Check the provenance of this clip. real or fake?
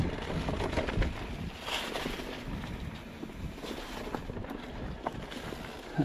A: real